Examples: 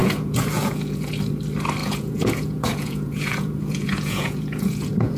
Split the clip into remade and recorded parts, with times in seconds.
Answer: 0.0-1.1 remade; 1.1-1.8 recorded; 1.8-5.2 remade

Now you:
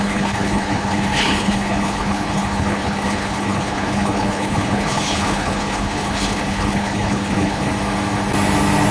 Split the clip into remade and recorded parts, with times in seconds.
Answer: 0.0-7.7 remade; 7.7-8.9 recorded

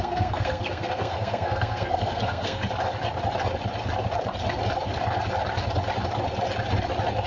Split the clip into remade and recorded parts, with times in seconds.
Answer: 0.0-2.6 remade; 2.6-7.3 recorded

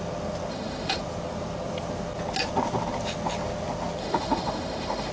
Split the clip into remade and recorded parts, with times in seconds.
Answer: 0.0-0.5 recorded; 0.5-1.0 remade; 1.0-4.0 recorded; 4.0-5.1 remade

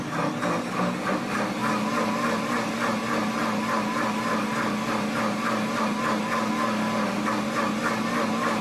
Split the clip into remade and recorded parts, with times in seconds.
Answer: 0.0-8.6 recorded